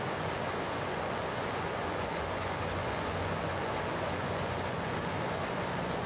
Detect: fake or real fake